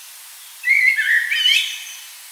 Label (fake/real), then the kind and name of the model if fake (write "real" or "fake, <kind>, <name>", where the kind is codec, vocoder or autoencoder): real